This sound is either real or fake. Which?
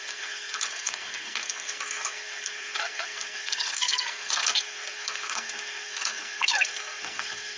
fake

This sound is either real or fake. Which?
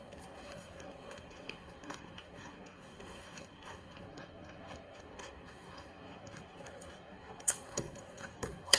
fake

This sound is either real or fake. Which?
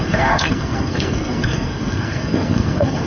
fake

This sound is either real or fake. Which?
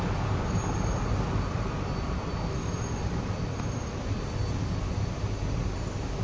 real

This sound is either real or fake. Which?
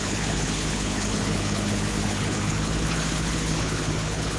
fake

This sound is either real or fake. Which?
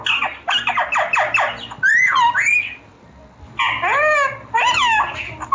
real